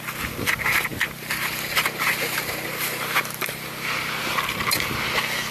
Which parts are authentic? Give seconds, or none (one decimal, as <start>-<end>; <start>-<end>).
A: 0.0-0.9; 4.2-5.5